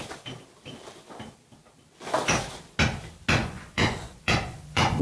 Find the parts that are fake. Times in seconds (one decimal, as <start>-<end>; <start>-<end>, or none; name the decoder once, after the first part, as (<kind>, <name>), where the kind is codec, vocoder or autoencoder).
3.4-5.0 (vocoder, Vocos)